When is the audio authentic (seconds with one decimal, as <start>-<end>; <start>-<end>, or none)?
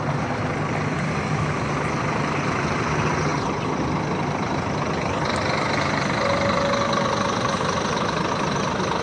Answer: 0.0-9.0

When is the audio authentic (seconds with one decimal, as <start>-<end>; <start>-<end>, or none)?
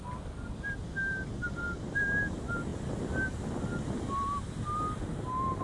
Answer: 0.0-5.6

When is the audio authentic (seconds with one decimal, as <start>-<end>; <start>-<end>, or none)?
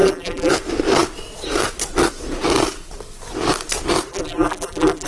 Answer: 0.5-4.1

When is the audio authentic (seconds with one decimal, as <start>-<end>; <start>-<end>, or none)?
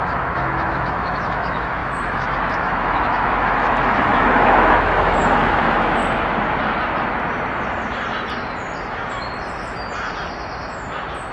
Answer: 6.0-11.3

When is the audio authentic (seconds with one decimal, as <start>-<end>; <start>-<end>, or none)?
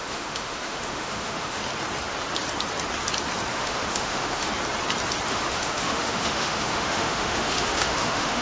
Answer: 1.6-3.5; 4.5-5.3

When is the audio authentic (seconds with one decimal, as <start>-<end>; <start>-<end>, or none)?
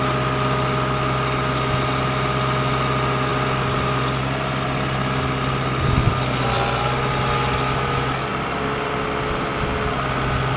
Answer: 0.0-10.6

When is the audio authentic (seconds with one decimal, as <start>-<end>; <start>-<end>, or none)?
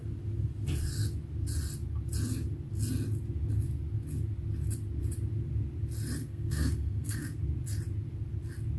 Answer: 0.0-6.2; 7.4-8.8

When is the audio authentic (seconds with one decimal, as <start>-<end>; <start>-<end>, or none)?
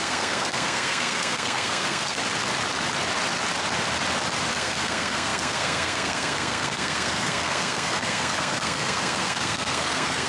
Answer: 2.2-4.5